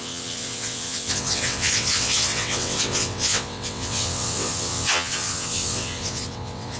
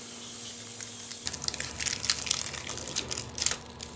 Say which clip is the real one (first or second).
second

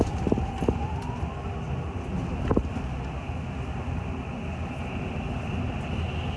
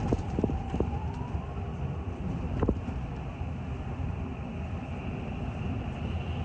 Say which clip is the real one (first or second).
first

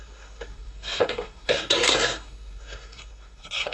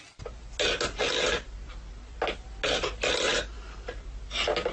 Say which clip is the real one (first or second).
second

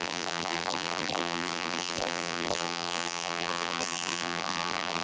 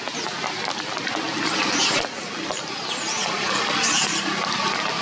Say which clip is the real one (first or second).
second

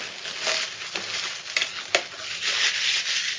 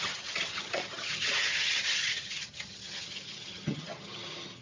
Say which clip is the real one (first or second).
first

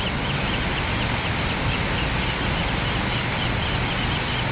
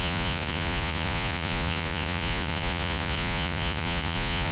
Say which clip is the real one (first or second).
first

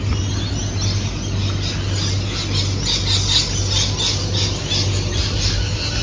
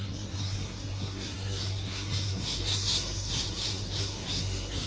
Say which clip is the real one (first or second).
first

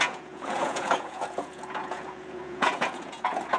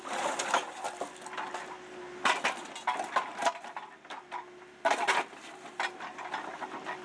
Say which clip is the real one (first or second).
second